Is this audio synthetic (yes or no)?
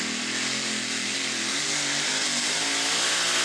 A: no